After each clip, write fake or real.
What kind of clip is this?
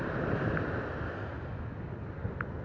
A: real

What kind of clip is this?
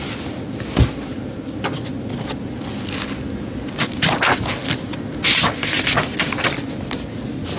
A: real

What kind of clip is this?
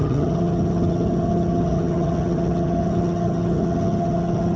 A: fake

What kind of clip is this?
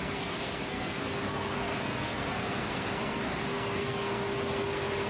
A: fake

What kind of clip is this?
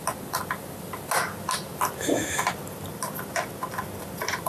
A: real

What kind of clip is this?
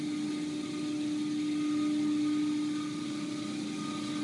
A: real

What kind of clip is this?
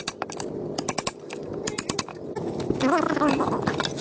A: real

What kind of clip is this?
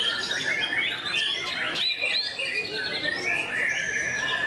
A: real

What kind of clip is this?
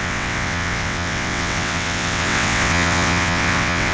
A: fake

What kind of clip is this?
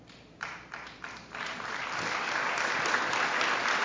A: fake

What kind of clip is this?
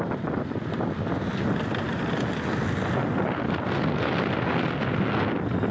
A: real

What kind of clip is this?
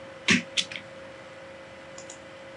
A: real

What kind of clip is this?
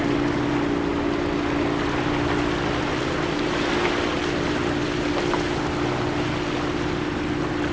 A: real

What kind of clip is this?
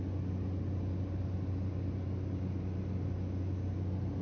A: real